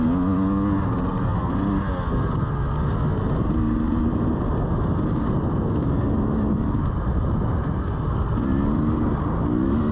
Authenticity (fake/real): real